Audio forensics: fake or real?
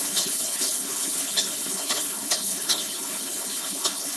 fake